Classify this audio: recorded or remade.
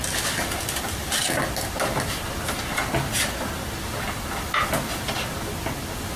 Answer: recorded